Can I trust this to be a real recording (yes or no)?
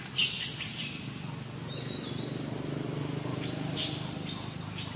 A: yes